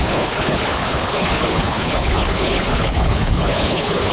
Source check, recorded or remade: remade